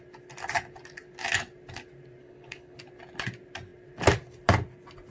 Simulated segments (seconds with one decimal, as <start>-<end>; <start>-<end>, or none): 2.2-2.8